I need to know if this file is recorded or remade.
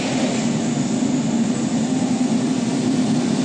recorded